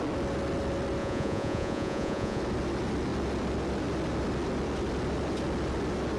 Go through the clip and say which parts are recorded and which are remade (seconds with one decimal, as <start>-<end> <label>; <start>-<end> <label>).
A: 0.0-1.0 recorded; 1.0-2.4 remade; 2.4-6.2 recorded